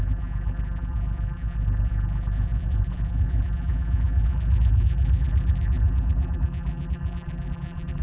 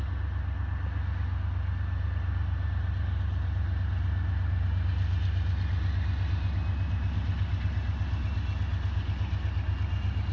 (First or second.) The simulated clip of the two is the first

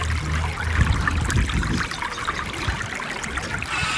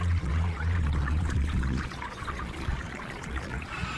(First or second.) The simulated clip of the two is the second